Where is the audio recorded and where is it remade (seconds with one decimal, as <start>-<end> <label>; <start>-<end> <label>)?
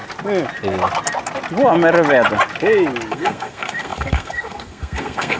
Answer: 0.0-3.1 recorded; 3.1-5.4 remade